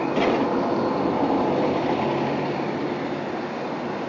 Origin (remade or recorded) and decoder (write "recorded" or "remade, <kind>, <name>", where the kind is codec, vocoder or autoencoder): recorded